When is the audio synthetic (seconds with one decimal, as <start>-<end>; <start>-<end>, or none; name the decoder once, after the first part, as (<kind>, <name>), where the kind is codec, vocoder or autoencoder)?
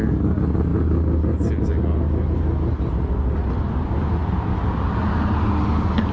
none